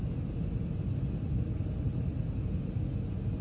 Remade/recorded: recorded